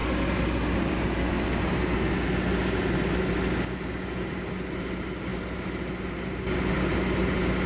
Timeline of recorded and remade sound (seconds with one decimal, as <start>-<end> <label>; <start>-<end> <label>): 0.0-7.7 recorded